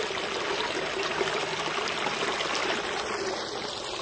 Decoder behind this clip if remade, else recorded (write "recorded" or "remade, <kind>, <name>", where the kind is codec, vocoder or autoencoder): recorded